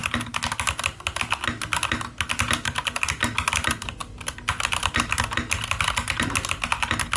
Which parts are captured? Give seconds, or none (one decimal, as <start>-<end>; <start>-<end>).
0.0-7.2